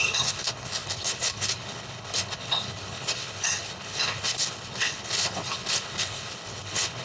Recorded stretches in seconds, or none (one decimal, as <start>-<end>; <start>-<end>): none